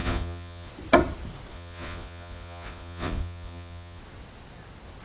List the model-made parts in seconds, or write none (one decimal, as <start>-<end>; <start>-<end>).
0.0-0.7; 1.5-4.0

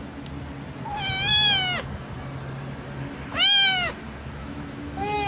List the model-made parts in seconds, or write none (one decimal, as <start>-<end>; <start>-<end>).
3.3-3.9; 4.4-5.3

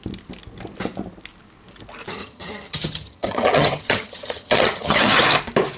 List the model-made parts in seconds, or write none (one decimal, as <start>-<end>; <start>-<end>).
2.1-5.2

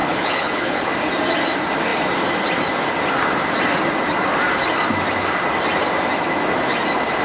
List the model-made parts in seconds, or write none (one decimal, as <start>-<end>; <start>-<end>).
0.0-0.9

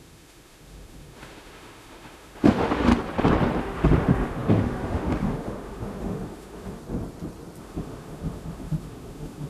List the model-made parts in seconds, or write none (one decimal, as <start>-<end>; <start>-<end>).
0.0-2.9; 3.6-6.8; 7.6-9.5

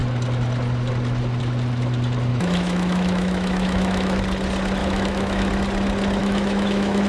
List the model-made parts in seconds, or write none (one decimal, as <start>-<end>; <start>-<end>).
2.3-4.2; 4.8-5.5; 6.2-7.1